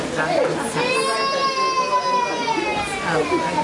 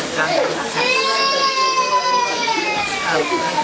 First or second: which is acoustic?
first